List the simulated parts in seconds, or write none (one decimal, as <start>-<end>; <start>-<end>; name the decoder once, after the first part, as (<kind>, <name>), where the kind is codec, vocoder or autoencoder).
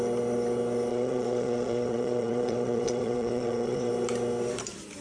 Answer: 0.9-3.9 (vocoder, Vocos)